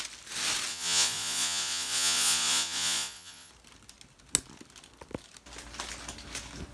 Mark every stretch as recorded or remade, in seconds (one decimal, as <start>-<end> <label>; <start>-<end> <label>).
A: 0.0-0.7 recorded; 0.7-3.5 remade; 3.5-6.7 recorded